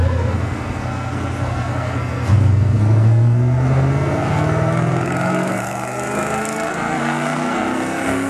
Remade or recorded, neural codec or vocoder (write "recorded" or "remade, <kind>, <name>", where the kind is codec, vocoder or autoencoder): remade, codec, SNAC